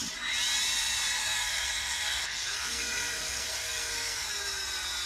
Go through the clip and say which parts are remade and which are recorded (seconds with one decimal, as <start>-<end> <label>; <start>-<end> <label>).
0.0-1.2 recorded; 1.2-4.3 remade; 4.3-5.1 recorded